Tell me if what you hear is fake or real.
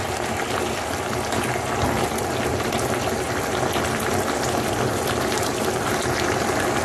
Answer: real